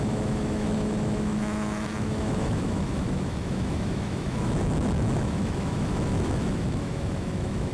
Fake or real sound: fake